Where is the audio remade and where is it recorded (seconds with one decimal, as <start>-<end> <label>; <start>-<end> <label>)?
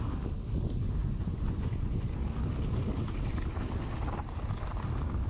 0.0-1.0 recorded; 1.0-2.2 remade; 2.2-5.3 recorded